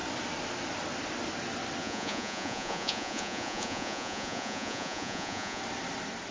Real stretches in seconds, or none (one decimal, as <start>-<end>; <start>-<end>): 0.0-1.8; 5.6-6.3